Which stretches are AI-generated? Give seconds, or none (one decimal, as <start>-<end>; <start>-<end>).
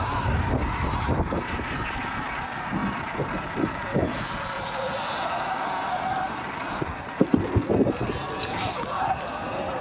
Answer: none